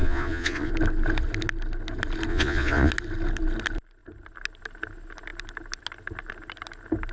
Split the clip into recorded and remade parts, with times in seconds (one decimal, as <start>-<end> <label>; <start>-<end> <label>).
0.0-0.7 remade; 0.7-2.3 recorded; 2.3-2.9 remade; 2.9-7.1 recorded